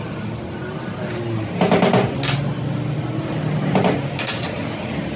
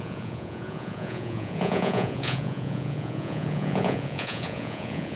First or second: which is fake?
second